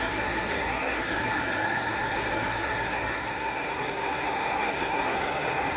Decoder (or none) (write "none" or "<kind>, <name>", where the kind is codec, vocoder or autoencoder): codec, SNAC